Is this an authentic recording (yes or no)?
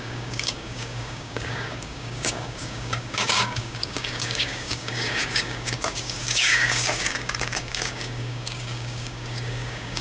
no